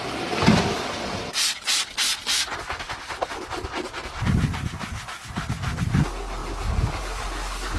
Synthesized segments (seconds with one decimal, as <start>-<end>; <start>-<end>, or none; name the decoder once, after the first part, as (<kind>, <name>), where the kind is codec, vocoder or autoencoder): none

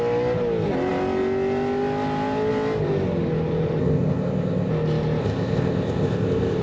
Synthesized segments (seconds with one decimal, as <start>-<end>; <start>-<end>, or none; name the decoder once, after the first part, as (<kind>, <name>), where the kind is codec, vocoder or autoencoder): 3.8-4.7 (codec, ZipCodec); 5.2-6.6

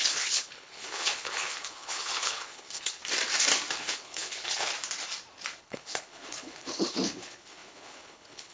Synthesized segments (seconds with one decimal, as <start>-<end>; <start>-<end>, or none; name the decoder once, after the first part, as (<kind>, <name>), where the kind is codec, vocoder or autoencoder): 0.0-3.0 (codec, HILCodec); 3.7-4.7; 5.6-8.5

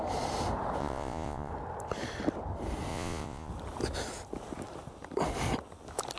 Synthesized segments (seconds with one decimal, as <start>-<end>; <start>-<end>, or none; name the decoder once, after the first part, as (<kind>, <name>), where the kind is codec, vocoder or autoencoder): 0.8-1.5 (vocoder, Vocos); 2.9-3.5

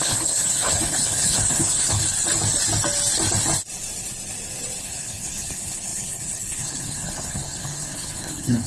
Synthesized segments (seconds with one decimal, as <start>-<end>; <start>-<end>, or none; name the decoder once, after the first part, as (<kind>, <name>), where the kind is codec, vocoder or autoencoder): 0.0-2.0 (codec, HILCodec); 4.8-8.7

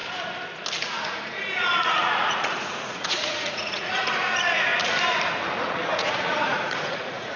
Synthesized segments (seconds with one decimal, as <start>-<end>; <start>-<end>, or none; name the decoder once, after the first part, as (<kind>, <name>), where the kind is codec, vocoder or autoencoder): 0.8-4.7 (vocoder, Vocos); 5.6-7.4

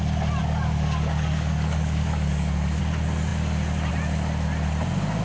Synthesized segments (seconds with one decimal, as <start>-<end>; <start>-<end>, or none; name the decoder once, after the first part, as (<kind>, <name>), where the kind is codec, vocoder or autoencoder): 0.4-2.8 (codec, DAC)